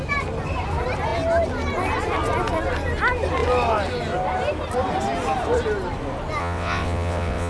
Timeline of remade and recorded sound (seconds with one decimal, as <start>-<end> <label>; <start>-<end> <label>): 0.0-6.4 recorded; 6.4-7.5 remade